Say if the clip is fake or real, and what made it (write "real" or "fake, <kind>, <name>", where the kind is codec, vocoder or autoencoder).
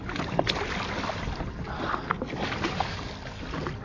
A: real